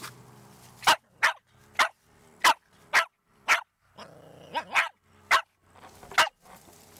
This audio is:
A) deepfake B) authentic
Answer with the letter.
B